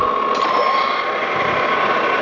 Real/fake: real